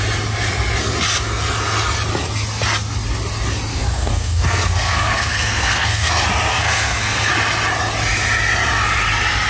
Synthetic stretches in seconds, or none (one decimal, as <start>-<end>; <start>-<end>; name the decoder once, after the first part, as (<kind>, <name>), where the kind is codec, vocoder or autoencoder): 3.7-6.1 (codec, SNAC); 6.5-7.3